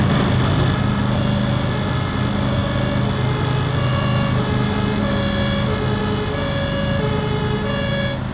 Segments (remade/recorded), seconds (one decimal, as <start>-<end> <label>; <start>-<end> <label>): 0.0-8.3 recorded